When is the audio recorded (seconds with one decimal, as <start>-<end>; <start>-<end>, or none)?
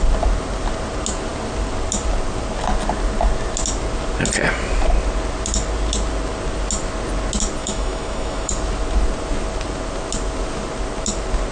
0.0-7.6; 8.5-11.5